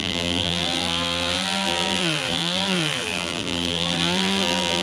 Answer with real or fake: fake